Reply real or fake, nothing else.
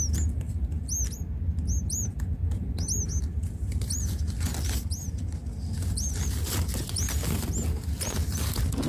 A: real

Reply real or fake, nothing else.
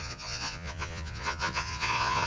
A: fake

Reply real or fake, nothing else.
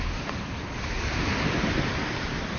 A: real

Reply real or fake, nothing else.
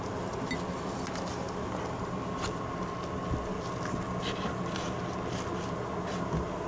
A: real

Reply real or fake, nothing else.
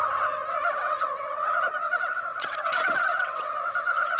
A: fake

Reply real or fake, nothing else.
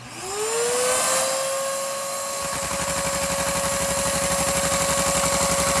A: real